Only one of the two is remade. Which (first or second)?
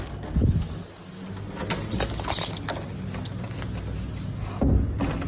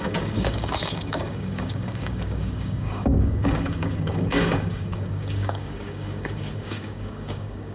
second